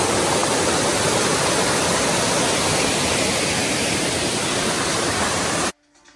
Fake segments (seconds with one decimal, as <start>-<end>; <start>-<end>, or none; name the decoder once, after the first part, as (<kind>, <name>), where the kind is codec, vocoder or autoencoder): 3.6-4.1 (vocoder, BigVGAN v2); 4.5-5.7